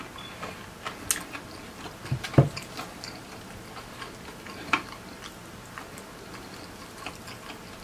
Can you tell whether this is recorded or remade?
recorded